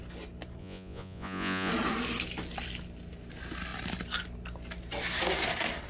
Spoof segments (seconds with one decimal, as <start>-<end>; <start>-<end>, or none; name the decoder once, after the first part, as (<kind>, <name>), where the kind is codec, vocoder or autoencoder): 0.6-1.7 (vocoder, Vocos)